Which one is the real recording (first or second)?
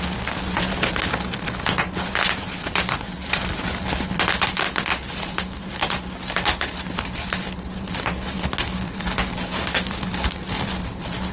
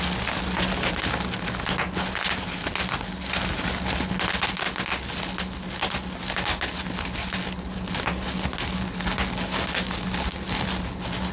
second